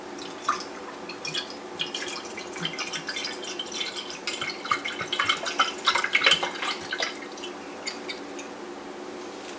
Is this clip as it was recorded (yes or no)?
yes